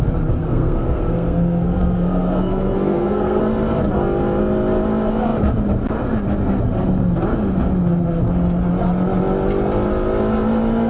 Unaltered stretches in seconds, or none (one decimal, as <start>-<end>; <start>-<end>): 0.0-0.4; 3.4-10.9